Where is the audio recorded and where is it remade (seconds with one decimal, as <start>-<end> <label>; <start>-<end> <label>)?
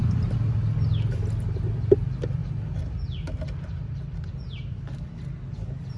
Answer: 0.0-6.0 recorded